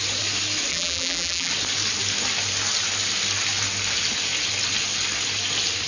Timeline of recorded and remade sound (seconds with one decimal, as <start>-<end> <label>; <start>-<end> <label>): 0.0-0.7 recorded; 0.7-1.5 remade; 1.5-5.9 recorded